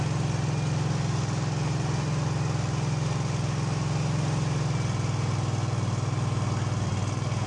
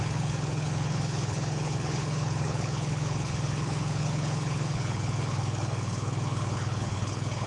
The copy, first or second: second